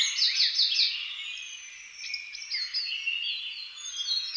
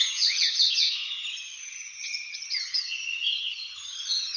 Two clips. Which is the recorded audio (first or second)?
first